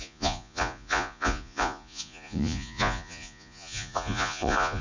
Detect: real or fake fake